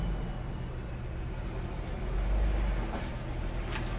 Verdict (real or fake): real